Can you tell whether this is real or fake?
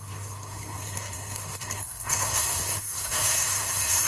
fake